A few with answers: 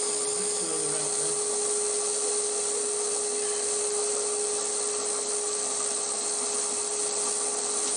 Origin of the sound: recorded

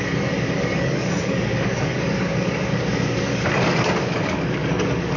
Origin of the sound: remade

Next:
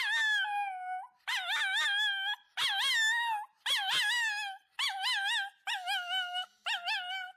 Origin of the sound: recorded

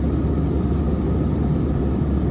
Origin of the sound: recorded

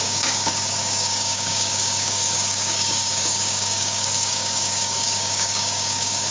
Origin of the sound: remade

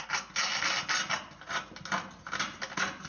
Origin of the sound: recorded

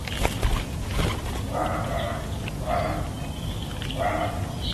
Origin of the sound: recorded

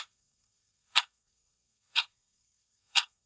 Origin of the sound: remade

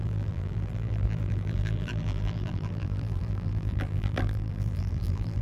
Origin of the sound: remade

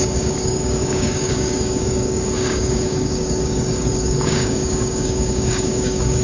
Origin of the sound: remade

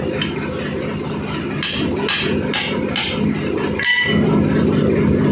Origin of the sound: recorded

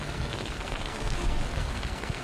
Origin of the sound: remade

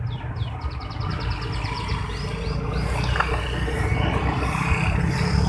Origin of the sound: recorded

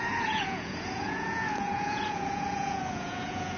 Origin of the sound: remade